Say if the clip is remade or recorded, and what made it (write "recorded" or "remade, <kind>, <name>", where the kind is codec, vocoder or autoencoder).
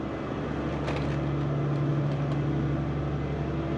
recorded